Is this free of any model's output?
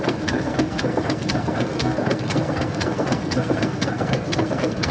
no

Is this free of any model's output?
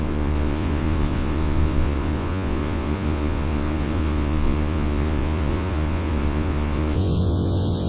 no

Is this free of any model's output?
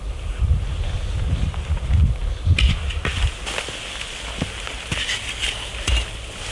yes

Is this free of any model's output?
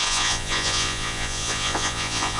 no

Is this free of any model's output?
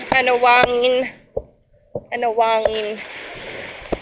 yes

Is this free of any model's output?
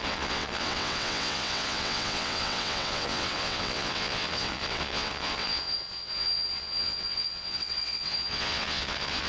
no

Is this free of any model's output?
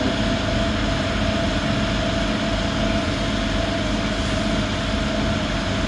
yes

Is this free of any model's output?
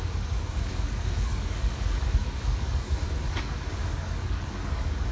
no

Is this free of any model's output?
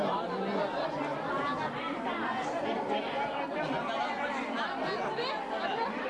yes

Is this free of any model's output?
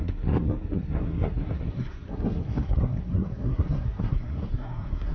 no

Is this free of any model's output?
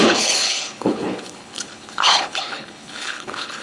no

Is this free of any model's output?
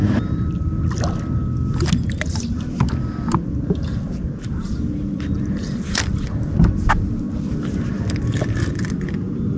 yes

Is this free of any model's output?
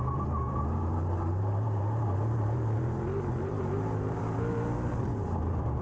no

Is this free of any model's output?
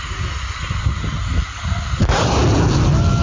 yes